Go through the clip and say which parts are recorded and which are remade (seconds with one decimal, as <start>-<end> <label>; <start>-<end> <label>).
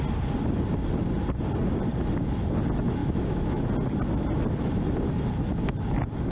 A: 0.0-3.0 recorded; 3.0-3.7 remade; 3.7-6.3 recorded